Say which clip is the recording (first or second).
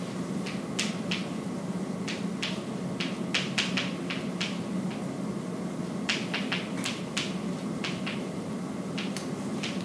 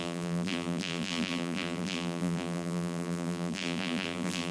first